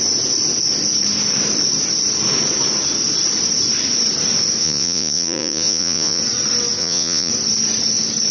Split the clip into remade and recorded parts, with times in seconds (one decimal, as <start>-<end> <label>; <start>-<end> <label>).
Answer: 0.0-4.6 recorded; 4.6-6.2 remade; 6.2-6.8 recorded; 6.8-7.3 remade; 7.3-8.3 recorded